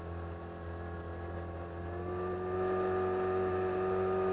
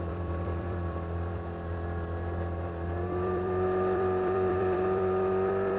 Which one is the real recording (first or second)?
first